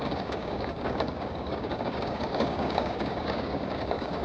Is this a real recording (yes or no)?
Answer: no